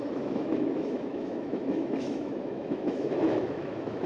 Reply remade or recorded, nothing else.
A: remade